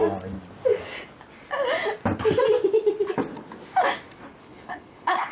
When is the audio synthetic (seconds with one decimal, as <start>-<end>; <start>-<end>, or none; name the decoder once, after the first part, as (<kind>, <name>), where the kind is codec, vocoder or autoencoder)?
4.4-5.3 (codec, HILCodec)